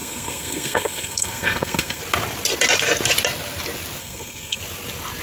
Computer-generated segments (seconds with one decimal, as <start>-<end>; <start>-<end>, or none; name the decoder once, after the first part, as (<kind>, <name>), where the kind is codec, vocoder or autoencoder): 0.0-2.0 (codec, SNAC); 4.0-4.6